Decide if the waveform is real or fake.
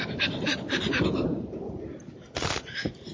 real